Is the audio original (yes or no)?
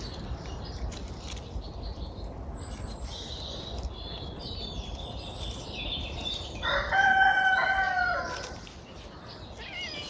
yes